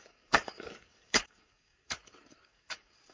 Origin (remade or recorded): remade